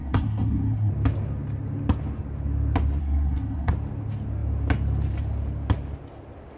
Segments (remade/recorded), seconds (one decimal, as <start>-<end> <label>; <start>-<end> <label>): 0.0-0.9 remade; 0.9-3.0 recorded; 3.0-3.7 remade; 3.7-6.6 recorded